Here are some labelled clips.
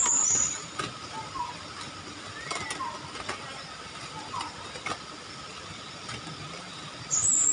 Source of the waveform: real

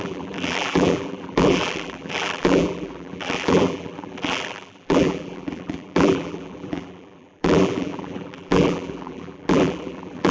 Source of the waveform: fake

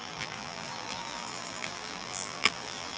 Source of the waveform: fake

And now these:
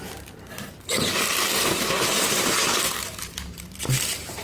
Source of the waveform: fake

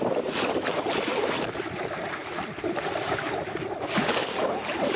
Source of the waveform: fake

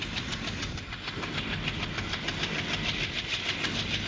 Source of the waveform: real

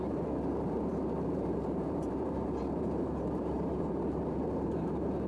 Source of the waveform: fake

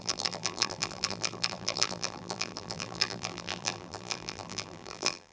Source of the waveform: fake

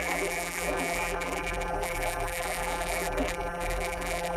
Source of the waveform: fake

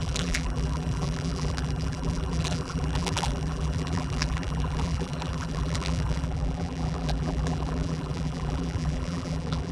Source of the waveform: fake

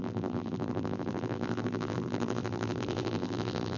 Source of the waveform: fake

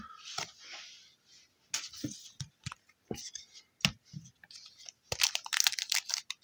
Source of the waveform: real